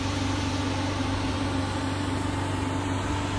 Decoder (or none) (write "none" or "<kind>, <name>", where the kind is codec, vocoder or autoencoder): none